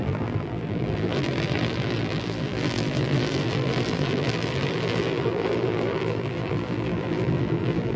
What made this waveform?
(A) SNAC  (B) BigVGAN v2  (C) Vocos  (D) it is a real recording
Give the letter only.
B